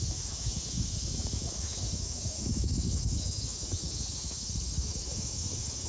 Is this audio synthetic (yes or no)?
yes